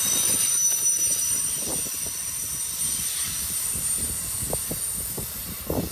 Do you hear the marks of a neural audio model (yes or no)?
no